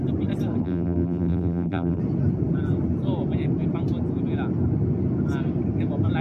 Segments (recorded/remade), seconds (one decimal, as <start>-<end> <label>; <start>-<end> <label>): 0.0-0.6 recorded; 0.6-2.0 remade; 2.0-6.2 recorded

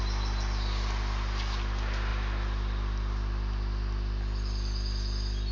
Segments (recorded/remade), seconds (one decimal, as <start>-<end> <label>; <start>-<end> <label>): 0.0-5.5 recorded

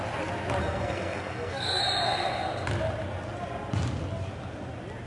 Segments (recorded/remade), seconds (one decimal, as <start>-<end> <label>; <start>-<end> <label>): 0.0-0.6 recorded; 0.6-1.8 remade; 1.8-5.1 recorded

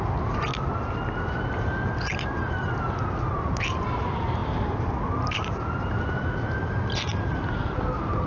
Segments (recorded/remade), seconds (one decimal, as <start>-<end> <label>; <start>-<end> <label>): 0.0-8.3 recorded

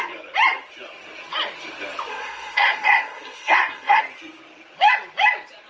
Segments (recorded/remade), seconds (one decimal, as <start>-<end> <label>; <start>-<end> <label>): 0.0-2.1 recorded; 2.1-4.0 remade; 4.0-5.7 recorded